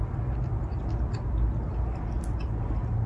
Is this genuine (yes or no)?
yes